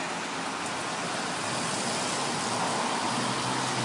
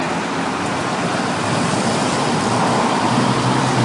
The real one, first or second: first